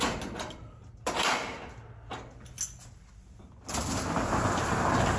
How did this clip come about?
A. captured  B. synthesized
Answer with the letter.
A